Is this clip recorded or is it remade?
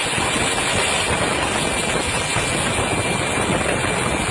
recorded